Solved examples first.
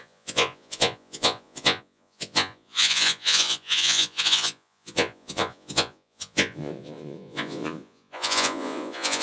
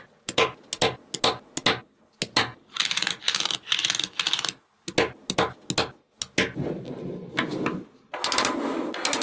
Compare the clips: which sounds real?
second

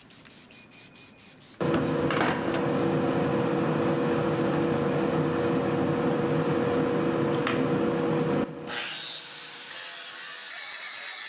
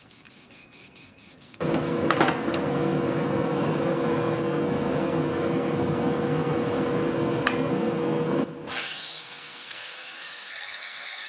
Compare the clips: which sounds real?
first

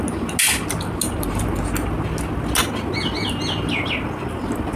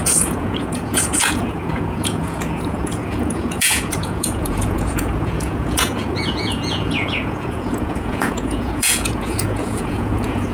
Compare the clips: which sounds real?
first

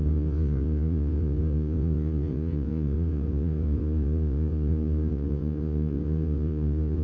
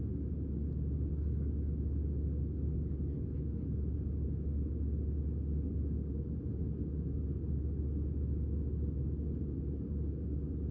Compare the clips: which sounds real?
second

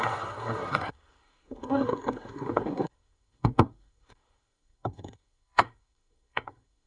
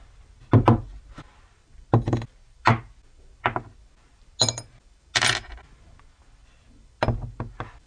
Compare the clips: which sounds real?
second